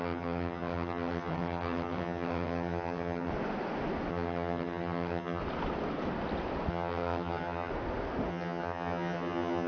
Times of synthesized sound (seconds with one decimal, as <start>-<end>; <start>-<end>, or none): 0.0-3.3; 4.1-5.4; 6.7-7.7; 8.3-9.7